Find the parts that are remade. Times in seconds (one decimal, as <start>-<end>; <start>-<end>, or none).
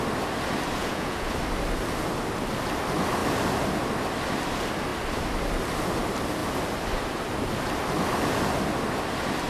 0.8-1.3